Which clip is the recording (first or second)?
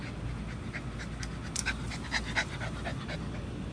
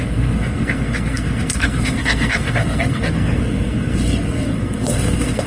first